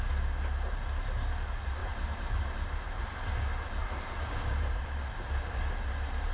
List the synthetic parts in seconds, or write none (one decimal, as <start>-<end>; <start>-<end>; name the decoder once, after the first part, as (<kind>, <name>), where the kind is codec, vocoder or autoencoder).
1.8-2.4 (vocoder, BigVGAN v2); 3.8-5.1